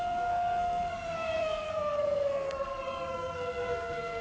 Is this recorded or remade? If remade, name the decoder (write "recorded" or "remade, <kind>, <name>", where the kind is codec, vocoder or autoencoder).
remade, codec, SNAC